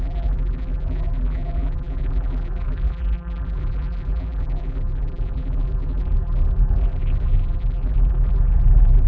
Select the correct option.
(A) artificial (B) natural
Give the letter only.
A